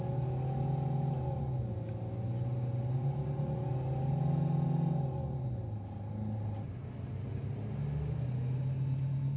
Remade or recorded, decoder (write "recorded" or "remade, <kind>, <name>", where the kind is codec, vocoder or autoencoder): recorded